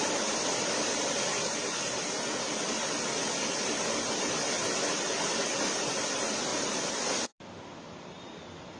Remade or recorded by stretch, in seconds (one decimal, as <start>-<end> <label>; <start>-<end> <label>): 0.0-8.8 recorded